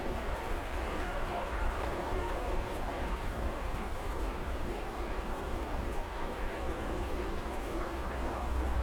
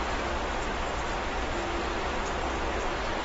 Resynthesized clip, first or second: first